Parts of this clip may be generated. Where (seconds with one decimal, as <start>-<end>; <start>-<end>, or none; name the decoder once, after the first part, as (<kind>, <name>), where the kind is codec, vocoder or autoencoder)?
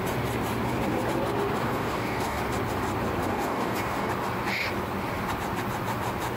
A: 1.6-2.4 (codec, DAC); 3.2-4.1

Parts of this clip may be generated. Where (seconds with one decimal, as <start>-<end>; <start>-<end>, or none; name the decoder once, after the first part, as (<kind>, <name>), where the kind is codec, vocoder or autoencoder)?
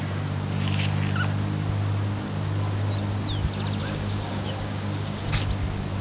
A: 3.8-5.3 (codec, DAC)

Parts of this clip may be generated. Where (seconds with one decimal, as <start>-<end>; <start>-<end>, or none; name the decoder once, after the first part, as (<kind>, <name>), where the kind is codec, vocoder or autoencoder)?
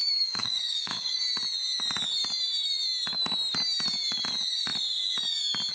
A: 0.0-1.1 (codec, DAC)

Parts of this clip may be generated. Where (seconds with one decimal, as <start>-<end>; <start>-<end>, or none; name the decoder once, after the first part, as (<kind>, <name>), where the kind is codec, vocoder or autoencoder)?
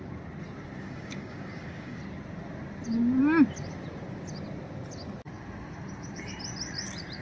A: 0.8-2.0 (codec, DAC)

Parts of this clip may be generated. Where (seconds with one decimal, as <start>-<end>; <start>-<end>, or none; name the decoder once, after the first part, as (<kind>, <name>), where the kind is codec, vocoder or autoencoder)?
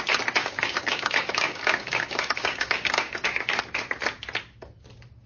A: 0.4-3.6 (codec, DAC)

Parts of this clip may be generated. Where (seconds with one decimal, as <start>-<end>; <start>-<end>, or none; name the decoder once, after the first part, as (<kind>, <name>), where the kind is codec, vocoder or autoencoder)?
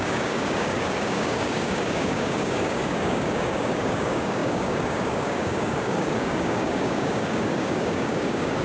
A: 0.0-8.6 (codec, DAC)